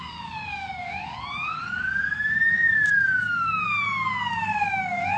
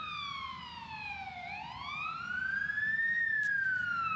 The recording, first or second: second